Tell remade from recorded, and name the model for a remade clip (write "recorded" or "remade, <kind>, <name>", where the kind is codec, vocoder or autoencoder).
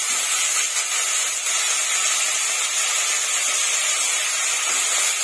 recorded